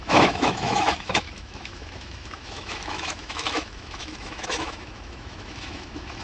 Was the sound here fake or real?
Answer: fake